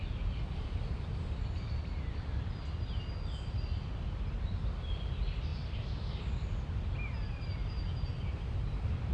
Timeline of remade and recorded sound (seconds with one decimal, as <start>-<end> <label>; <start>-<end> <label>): 0.0-9.1 recorded